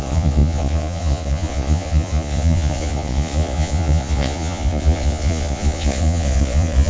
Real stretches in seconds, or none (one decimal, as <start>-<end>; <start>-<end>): none